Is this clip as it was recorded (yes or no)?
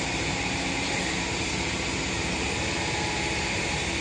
no